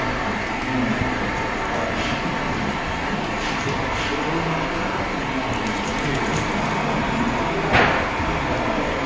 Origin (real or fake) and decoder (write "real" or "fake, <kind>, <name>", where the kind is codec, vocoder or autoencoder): real